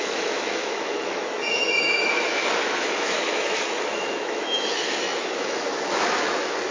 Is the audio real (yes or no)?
no